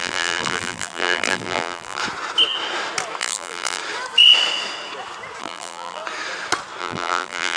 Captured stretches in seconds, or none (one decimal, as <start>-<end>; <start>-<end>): 2.0-3.2; 3.8-5.4; 6.0-6.8